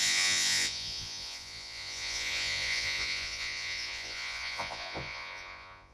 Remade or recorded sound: remade